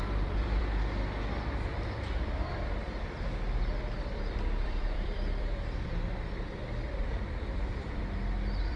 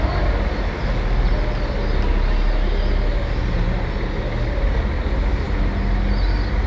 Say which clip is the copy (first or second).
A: first